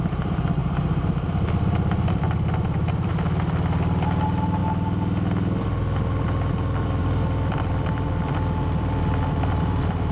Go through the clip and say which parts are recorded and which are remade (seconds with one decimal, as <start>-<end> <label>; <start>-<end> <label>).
0.0-4.6 remade; 4.6-7.0 recorded; 7.0-10.1 remade